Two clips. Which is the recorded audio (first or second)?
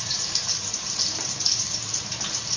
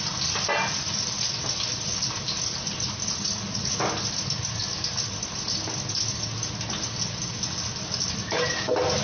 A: second